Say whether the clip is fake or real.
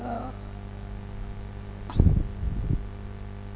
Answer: real